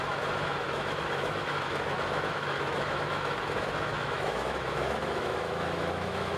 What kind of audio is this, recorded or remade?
remade